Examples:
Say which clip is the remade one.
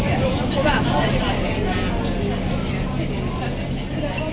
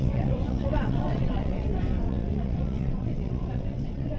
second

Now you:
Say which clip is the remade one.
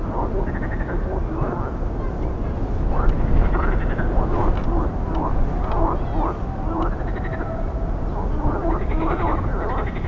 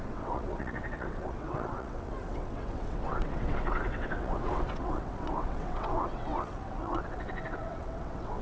second